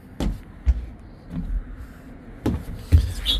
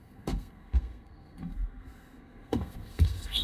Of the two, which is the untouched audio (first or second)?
first